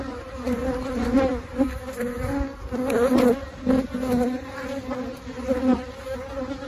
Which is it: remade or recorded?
recorded